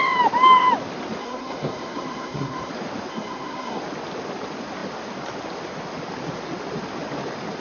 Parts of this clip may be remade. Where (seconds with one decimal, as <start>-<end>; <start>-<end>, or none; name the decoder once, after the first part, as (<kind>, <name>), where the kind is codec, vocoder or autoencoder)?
1.2-2.7 (codec, SNAC); 3.1-3.8